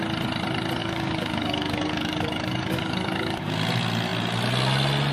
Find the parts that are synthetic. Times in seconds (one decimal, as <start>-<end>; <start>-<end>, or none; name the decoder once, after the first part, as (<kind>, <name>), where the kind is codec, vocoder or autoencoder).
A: 0.8-3.6 (codec, DAC)